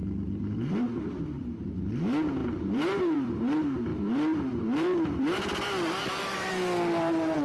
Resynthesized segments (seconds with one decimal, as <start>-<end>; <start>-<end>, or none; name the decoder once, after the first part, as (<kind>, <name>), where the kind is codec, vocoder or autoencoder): 0.0-1.2 (vocoder, BigVGAN v2); 2.4-3.4; 3.9-6.5